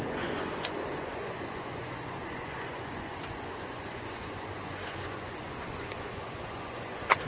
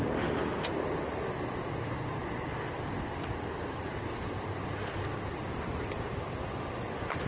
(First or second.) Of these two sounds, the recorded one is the second